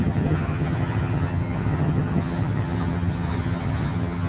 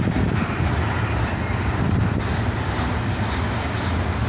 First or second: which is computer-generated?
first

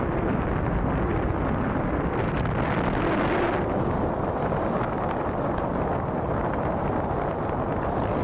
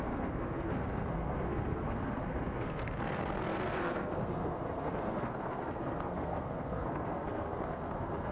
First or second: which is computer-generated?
second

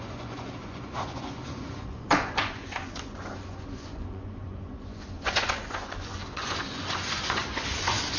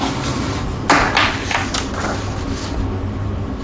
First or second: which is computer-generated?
first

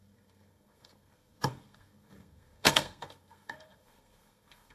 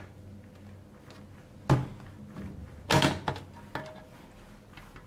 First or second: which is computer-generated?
first